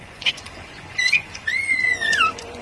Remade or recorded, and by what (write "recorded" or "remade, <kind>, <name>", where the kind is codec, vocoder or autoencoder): remade, vocoder, Vocos